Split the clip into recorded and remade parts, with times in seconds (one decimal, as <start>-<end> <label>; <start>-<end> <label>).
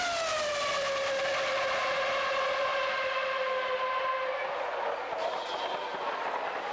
0.0-2.7 recorded; 2.7-4.1 remade; 4.1-6.7 recorded